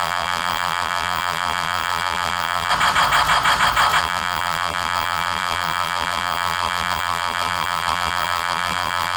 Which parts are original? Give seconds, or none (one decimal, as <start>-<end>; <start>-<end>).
2.7-4.0